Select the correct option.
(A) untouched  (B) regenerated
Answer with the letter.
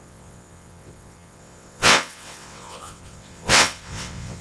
B